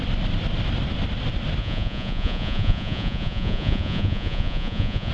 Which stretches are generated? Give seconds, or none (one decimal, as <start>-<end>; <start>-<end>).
1.6-5.1